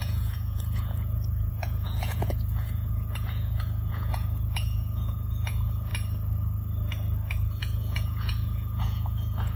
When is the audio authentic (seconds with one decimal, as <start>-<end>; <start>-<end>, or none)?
5.9-7.6